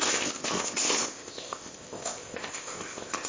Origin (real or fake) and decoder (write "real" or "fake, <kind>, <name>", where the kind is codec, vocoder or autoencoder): fake, codec, ZipCodec